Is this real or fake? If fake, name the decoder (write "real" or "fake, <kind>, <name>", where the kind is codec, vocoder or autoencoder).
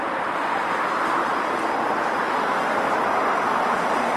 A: real